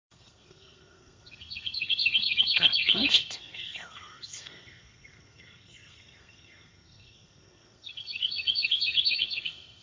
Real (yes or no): no